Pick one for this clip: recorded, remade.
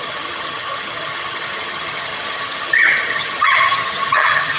remade